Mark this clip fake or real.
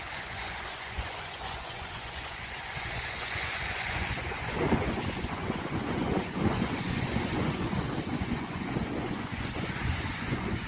fake